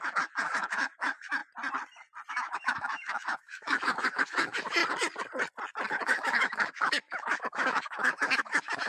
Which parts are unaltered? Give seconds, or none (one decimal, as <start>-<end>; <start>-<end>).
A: 1.4-2.3; 4.8-5.9